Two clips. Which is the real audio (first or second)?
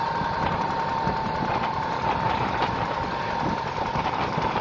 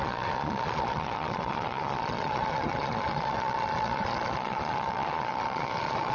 first